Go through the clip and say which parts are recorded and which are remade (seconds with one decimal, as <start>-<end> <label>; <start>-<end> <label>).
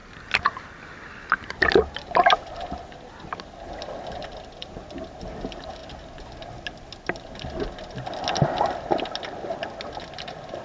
0.0-10.6 recorded